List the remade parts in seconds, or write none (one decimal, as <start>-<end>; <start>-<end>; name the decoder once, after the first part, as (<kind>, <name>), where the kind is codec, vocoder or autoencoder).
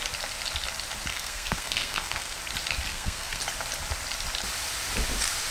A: 1.1-2.4 (codec, SNAC); 2.9-3.4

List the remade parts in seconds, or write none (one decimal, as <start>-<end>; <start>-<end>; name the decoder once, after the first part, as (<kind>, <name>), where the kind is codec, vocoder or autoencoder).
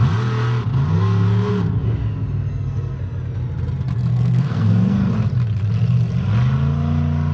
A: 0.9-1.5 (codec, SNAC); 2.5-3.0; 4.1-5.1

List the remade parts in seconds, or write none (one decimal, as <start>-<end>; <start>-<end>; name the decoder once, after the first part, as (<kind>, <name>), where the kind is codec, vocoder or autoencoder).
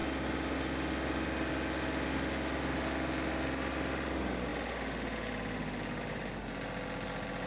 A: none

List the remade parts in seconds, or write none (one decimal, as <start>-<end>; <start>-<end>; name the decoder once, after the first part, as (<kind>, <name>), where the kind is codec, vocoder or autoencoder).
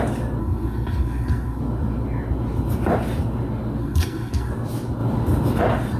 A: 0.4-1.6 (codec, SNAC); 3.8-4.5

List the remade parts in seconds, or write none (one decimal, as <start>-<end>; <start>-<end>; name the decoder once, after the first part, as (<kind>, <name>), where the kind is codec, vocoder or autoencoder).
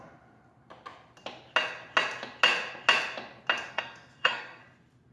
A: 3.7-4.6 (codec, SNAC)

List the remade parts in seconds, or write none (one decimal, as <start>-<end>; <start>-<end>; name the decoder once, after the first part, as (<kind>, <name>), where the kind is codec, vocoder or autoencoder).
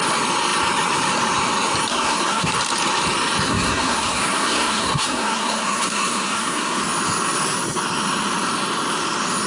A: 1.9-2.5 (codec, SNAC); 3.5-6.8